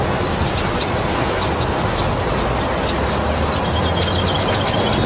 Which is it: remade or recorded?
recorded